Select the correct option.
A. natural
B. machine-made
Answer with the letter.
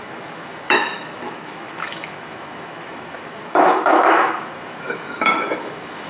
B